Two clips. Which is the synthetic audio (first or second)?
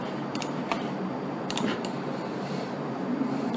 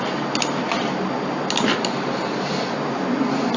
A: first